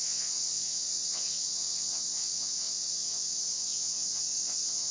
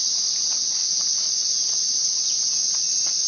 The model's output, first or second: first